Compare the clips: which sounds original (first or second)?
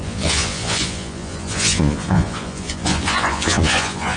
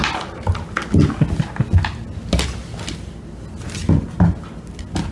second